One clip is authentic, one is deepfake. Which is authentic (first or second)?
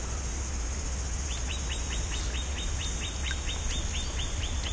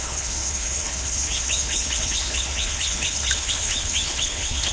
first